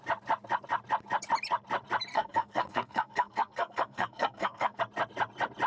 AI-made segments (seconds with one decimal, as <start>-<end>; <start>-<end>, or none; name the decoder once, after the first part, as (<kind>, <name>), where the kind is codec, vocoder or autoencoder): 2.1-4.8 (codec, SNAC)